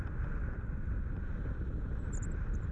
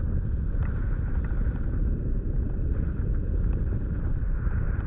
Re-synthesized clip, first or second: second